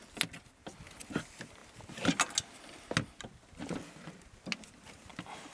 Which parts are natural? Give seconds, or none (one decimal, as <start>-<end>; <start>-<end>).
0.0-5.5